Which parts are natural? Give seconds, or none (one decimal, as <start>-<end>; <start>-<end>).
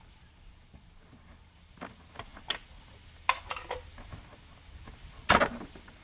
0.0-6.0